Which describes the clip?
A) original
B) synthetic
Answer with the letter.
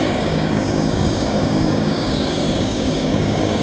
B